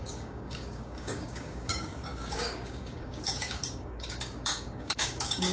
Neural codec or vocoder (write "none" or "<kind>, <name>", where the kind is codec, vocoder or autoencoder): codec, DAC